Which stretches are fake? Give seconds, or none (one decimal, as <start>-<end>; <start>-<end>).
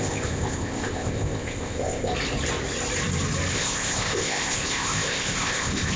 0.0-2.1; 3.5-6.0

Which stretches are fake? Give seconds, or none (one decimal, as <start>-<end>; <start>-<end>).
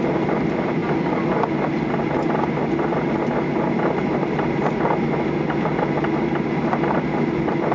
none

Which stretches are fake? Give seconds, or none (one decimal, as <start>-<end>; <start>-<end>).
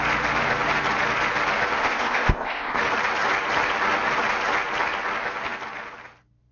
1.8-2.8